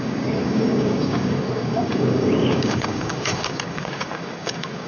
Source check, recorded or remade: remade